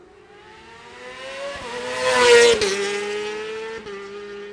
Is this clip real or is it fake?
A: real